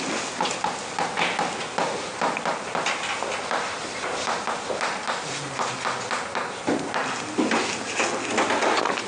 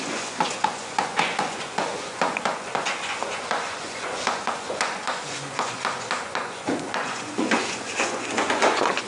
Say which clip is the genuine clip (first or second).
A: first